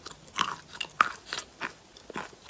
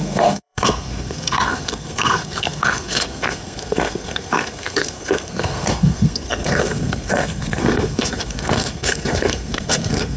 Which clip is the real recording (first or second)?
first